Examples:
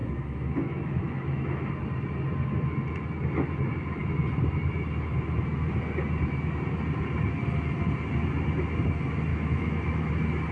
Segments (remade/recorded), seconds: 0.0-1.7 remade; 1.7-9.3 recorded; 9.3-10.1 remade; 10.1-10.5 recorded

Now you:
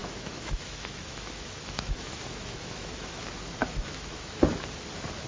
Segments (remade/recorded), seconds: 0.0-3.2 remade; 3.2-3.6 recorded; 3.6-4.4 remade; 4.4-5.3 recorded

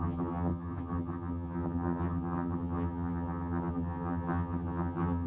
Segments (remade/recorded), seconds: 0.0-5.3 remade

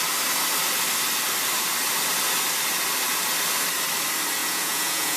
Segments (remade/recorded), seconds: 0.0-4.4 recorded; 4.4-5.2 remade

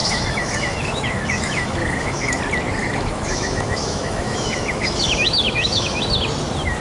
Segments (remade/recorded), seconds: 0.0-2.4 remade; 2.4-2.8 recorded; 2.8-6.0 remade; 6.0-6.8 recorded

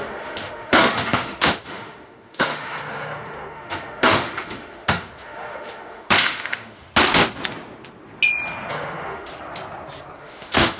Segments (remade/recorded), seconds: 0.0-6.9 remade; 6.9-8.7 recorded; 8.7-9.3 remade; 9.3-10.2 recorded; 10.2-10.8 remade